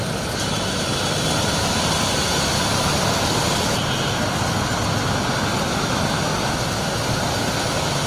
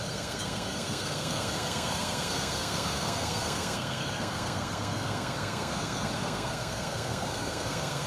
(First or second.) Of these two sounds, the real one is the first